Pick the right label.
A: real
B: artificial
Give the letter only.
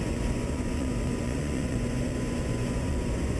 B